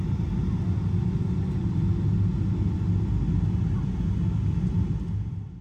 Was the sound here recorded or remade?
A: recorded